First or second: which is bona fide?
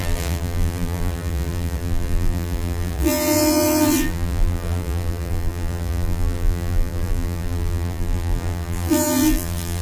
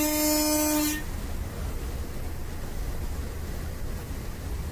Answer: second